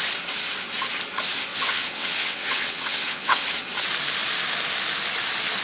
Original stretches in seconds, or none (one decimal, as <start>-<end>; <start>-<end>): 0.0-1.5; 3.4-5.6